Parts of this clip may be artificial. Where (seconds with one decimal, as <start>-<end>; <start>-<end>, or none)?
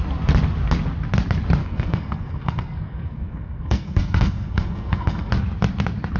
1.6-5.3